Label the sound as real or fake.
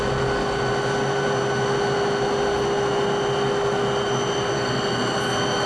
real